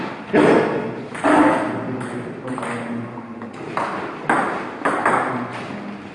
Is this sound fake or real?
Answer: real